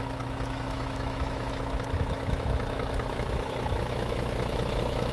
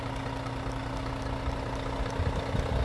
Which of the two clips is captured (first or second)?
second